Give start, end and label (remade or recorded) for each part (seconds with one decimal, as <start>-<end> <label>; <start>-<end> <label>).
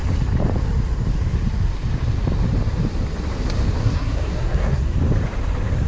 0.0-3.8 recorded; 3.8-5.0 remade; 5.0-5.9 recorded